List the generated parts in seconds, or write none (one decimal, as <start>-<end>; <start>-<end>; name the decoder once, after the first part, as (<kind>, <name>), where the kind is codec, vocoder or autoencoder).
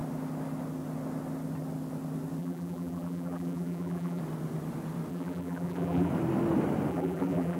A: 2.4-4.2 (vocoder, BigVGAN v2); 5.1-6.1; 6.9-7.6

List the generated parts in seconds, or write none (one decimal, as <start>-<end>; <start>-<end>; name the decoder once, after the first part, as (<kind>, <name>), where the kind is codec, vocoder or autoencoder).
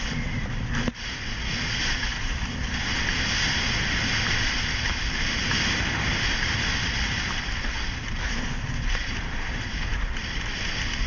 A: 2.1-3.2 (vocoder, BigVGAN v2); 5.4-7.4; 9.0-10.1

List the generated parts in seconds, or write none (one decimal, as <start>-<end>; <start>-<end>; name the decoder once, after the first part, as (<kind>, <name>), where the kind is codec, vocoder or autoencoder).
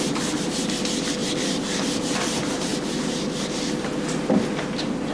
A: 1.2-1.8 (vocoder, BigVGAN v2)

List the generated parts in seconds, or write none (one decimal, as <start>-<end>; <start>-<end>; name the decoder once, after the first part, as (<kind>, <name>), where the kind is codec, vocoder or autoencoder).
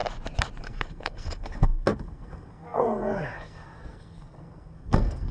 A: 0.6-5.3 (codec, SNAC)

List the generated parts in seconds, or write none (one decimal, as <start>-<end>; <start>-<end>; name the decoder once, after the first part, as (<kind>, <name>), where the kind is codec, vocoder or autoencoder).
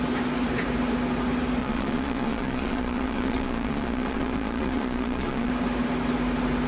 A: 1.6-5.5 (vocoder, Vocos)